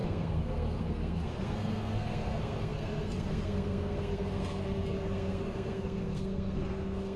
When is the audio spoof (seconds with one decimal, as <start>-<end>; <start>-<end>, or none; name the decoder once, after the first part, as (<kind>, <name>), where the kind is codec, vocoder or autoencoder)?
0.0-7.2 (codec, SNAC)